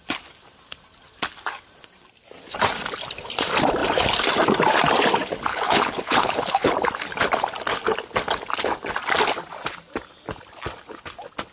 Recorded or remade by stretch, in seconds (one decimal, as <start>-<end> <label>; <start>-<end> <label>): 0.0-5.5 recorded; 5.5-6.7 remade; 6.7-11.5 recorded